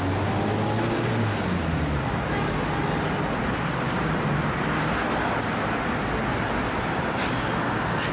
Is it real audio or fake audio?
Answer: real